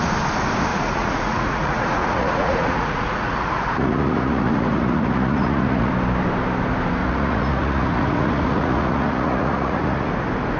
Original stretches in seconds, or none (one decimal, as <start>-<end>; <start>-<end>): 0.0-0.7; 5.9-7.0; 10.1-10.6